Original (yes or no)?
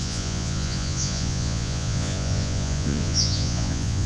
no